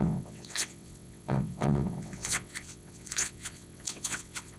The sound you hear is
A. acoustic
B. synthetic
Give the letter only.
B